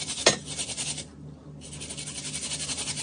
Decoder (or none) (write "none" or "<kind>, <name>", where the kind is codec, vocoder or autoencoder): none